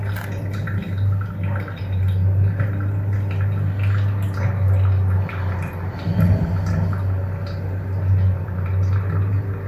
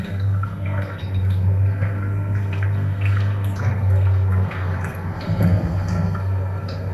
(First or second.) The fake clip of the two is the second